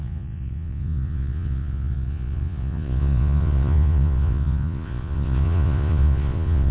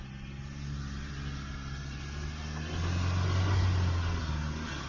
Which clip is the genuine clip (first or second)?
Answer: second